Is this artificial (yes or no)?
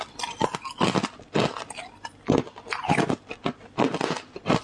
no